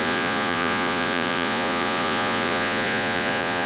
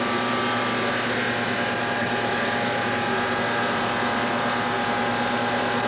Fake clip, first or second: first